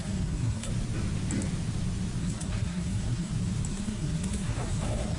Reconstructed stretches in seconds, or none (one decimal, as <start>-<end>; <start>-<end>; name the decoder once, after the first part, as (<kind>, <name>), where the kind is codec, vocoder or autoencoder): 0.0-0.7 (codec, SNAC); 2.2-3.3; 3.7-5.2